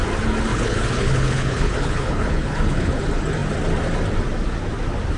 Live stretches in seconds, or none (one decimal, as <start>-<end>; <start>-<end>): 0.0-0.5; 3.0-5.2